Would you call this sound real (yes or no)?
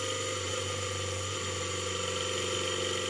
yes